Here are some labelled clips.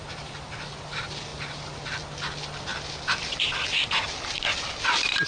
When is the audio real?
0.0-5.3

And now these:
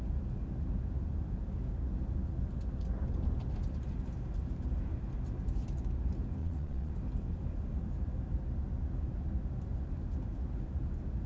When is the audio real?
0.0-6.4; 6.9-11.3

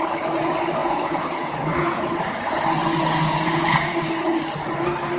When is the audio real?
0.0-0.8; 2.1-2.8; 4.0-5.2

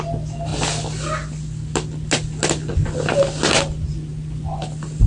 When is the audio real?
0.0-5.1

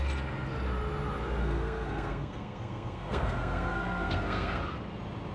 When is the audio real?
0.0-1.4; 4.6-5.3

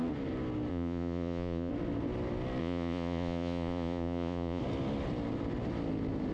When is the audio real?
0.0-0.7; 1.7-2.6; 4.6-6.3

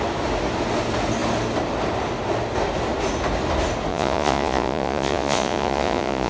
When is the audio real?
0.0-3.9

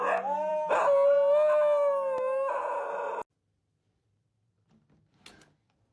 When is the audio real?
0.0-5.9